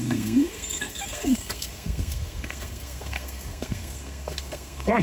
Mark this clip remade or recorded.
remade